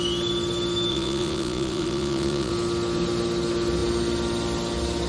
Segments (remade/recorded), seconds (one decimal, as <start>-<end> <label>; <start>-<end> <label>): 0.0-0.9 recorded; 0.9-2.5 remade; 2.5-5.1 recorded

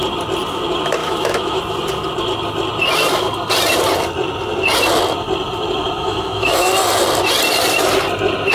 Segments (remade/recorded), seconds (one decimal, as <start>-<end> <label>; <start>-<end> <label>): 0.0-1.0 recorded; 1.0-1.6 remade; 1.6-6.0 recorded; 6.0-6.7 remade; 6.7-8.5 recorded

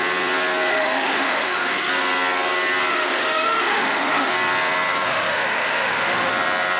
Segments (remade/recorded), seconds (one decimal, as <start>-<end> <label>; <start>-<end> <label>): 0.0-0.7 recorded; 0.7-1.9 remade; 1.9-2.9 recorded; 2.9-4.3 remade; 4.3-5.1 recorded; 5.1-6.3 remade; 6.3-6.8 recorded

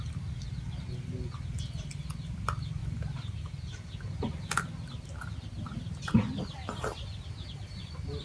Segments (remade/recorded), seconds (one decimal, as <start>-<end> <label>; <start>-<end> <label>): 0.0-8.2 recorded